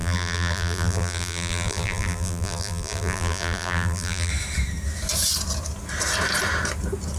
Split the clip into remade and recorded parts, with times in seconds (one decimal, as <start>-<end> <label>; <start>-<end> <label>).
0.0-4.3 remade; 4.3-7.2 recorded